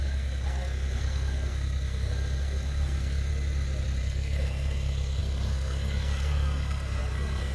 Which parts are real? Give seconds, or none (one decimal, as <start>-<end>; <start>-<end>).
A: 3.3-4.0